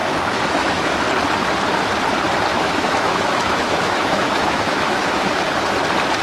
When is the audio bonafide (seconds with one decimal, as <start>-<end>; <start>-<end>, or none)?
1.0-2.5; 5.4-6.2